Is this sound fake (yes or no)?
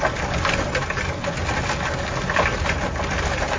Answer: no